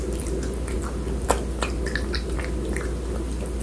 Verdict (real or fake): real